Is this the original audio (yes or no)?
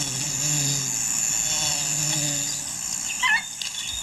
yes